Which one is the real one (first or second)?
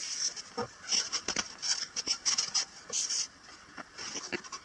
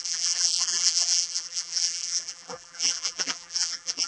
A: first